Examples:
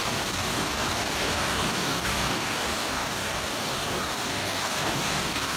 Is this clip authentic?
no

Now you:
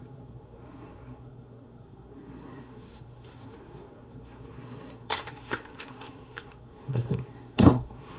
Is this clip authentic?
no